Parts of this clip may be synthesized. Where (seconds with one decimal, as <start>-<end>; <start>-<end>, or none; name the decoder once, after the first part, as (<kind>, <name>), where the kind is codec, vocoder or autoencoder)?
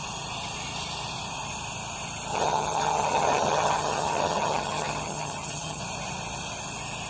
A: 2.3-5.8 (vocoder, HiFi-GAN)